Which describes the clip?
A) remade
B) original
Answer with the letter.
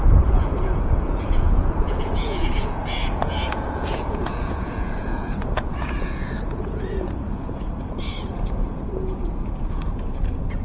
A